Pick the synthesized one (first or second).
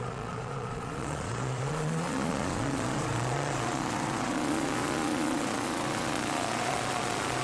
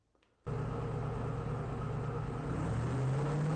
first